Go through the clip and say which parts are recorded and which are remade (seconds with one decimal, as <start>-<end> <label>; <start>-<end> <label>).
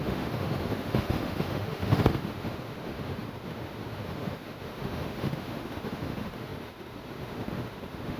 0.0-8.2 remade